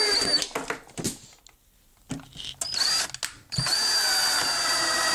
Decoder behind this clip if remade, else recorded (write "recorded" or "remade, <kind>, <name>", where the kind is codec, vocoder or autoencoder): recorded